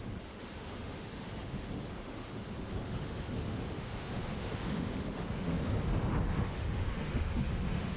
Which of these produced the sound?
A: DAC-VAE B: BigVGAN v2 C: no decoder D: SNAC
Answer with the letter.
A